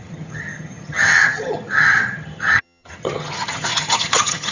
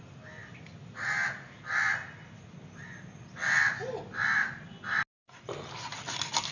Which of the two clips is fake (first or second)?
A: first